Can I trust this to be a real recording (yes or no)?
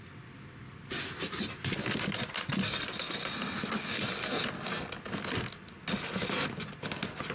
yes